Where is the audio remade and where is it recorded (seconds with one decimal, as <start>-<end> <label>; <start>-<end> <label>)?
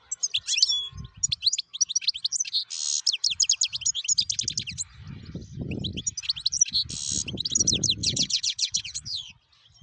0.0-8.0 recorded; 8.0-9.3 remade; 9.3-9.8 recorded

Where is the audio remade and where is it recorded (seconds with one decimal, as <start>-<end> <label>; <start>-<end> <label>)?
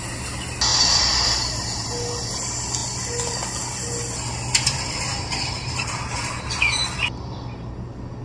0.0-8.2 recorded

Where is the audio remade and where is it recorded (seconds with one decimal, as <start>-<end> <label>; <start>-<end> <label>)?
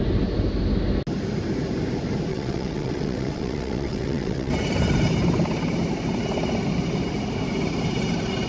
0.0-2.3 recorded; 2.3-4.5 remade; 4.5-8.5 recorded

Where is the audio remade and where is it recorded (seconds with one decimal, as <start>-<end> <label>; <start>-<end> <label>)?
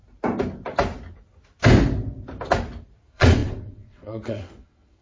0.0-3.0 recorded; 3.0-5.0 remade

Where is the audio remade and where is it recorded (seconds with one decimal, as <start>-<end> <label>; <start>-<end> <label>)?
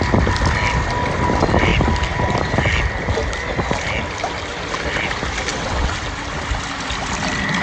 0.0-5.5 recorded; 5.5-6.0 remade; 6.0-7.6 recorded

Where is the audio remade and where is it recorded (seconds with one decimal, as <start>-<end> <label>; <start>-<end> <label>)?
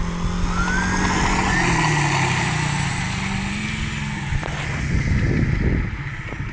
0.0-6.5 recorded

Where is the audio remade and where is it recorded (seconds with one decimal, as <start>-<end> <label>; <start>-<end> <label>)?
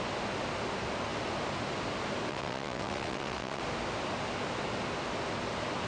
0.0-2.3 recorded; 2.3-3.6 remade; 3.6-5.9 recorded